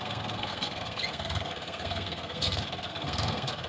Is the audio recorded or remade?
remade